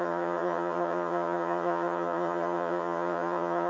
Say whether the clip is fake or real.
fake